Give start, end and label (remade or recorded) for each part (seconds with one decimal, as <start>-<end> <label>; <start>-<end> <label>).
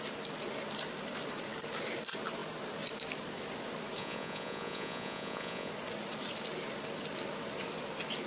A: 0.0-4.0 recorded; 4.0-5.7 remade; 5.7-8.3 recorded